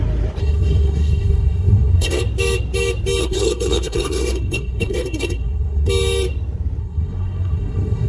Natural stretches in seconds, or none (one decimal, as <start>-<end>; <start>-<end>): 0.0-0.4; 2.2-3.2; 5.9-6.8